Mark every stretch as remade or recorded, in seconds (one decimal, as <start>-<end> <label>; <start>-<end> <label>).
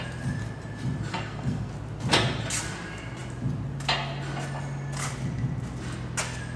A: 0.0-1.1 recorded; 1.1-1.7 remade; 1.7-6.6 recorded